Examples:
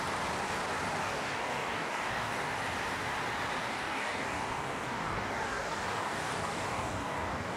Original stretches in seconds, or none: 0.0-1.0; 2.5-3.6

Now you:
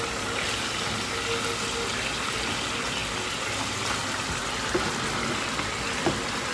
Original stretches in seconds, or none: 0.0-6.5

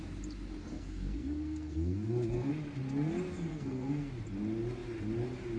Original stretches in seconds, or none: 0.0-0.7; 2.5-3.5; 4.1-5.6

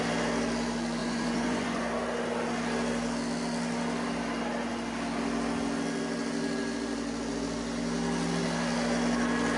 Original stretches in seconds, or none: 0.0-1.0; 1.9-9.6

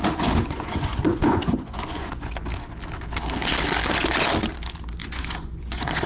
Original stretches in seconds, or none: 2.3-5.0

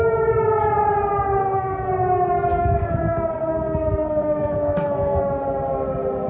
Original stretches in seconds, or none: 0.0-1.4; 1.9-2.5; 5.2-6.3